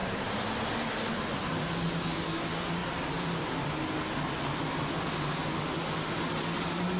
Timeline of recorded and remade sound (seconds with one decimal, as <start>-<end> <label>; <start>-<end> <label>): 0.0-7.0 recorded

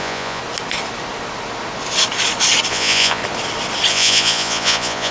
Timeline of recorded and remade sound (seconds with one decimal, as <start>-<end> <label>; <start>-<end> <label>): 0.0-0.4 remade; 0.4-2.7 recorded; 2.7-3.2 remade; 3.2-3.9 recorded; 3.9-5.1 remade

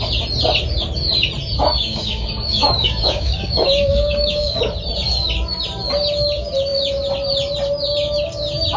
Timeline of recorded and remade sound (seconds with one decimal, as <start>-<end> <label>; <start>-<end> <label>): 0.0-1.7 recorded; 1.7-4.6 remade; 4.6-8.8 recorded

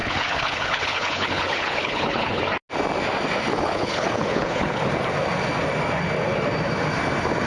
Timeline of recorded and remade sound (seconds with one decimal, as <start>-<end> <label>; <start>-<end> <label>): 0.0-2.4 remade; 2.4-3.5 recorded; 3.5-4.9 remade; 4.9-7.5 recorded